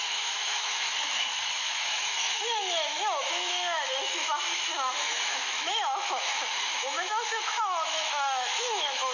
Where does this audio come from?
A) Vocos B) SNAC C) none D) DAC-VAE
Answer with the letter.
D